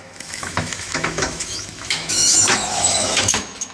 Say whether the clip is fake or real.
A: fake